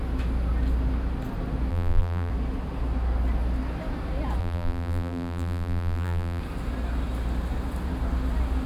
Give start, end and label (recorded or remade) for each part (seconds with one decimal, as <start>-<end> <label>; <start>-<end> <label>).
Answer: 0.0-1.7 recorded; 1.7-2.3 remade; 2.3-4.4 recorded; 4.4-6.4 remade; 6.4-8.7 recorded